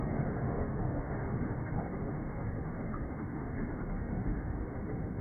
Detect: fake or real fake